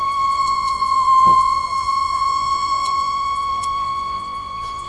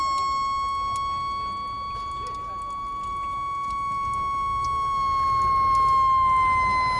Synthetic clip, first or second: first